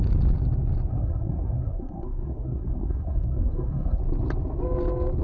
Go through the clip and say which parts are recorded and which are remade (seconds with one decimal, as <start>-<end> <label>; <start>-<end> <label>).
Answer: 0.0-0.9 recorded; 0.9-4.0 remade; 4.0-5.2 recorded